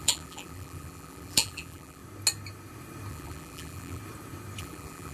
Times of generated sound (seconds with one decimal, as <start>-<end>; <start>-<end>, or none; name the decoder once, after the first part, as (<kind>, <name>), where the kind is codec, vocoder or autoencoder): 0.0-2.0 (vocoder, BigVGAN v2); 3.1-4.0; 4.6-5.1